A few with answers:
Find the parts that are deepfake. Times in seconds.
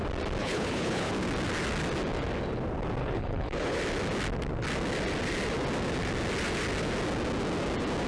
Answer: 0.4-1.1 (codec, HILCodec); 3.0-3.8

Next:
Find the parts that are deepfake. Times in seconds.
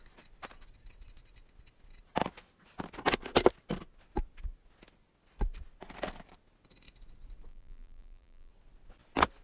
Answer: 7.5-8.5 (vocoder, BigVGAN v2)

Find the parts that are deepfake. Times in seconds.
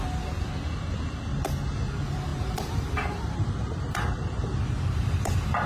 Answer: 2.3-5.7 (vocoder, BigVGAN v2)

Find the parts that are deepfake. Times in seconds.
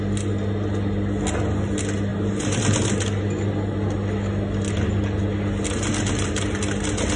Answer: none